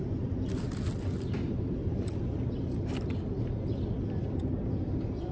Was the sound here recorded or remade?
recorded